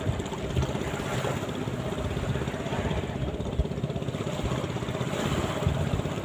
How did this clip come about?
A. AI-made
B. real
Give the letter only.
B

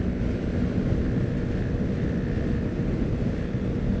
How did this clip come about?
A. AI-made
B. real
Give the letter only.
B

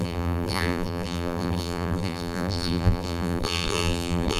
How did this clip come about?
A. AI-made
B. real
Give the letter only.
A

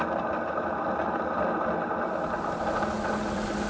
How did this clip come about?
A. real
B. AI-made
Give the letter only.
A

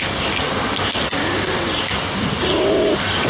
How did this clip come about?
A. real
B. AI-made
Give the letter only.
A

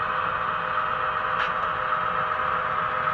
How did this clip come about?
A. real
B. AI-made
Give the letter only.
A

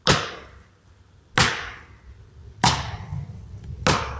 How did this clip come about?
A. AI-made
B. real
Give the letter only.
B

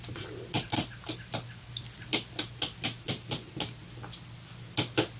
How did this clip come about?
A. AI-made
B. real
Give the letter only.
B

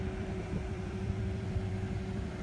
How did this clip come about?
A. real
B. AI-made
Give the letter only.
B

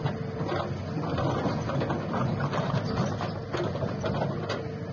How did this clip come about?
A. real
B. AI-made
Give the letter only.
A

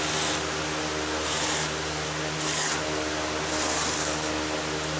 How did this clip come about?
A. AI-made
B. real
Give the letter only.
B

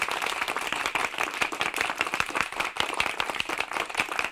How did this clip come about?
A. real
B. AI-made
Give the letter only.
B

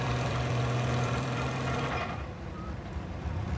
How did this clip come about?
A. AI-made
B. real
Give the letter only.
A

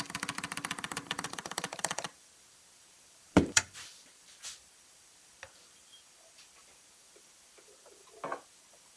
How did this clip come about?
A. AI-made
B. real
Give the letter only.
A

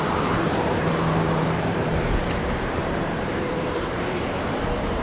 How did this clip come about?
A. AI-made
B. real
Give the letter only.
A